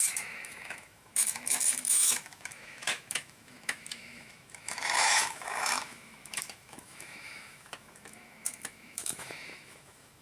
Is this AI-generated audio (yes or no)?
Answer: yes